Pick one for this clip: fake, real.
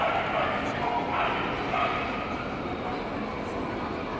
real